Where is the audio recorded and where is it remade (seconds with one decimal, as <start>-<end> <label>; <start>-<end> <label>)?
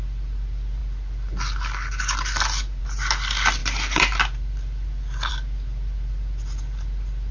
0.0-7.3 recorded